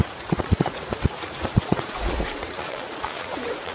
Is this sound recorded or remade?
remade